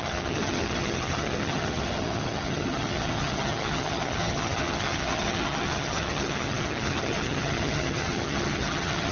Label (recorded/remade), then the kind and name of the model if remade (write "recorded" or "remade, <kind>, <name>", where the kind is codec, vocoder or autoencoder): remade, vocoder, HiFi-GAN